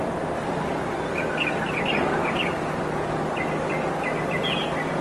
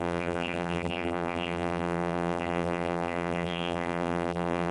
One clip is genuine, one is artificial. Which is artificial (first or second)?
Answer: second